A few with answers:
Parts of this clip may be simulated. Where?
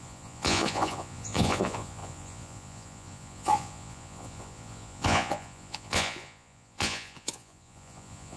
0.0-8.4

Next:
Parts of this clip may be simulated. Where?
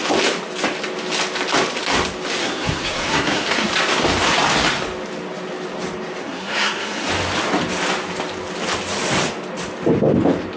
2.4-3.7; 6.2-7.1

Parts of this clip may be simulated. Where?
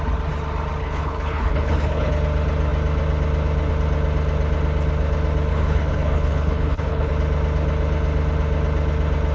0.8-2.1; 5.5-7.1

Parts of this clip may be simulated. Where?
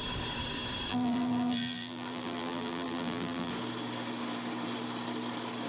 0.9-3.5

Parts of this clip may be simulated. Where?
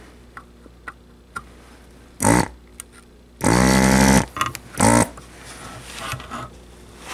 none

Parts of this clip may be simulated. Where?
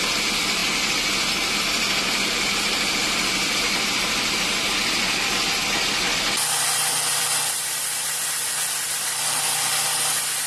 0.0-0.6; 2.4-10.5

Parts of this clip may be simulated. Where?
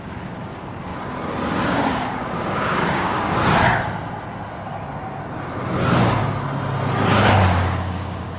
0.0-0.9; 1.9-3.4; 7.4-8.4